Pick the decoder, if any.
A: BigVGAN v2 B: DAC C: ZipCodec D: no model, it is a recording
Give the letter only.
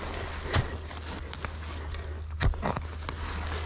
D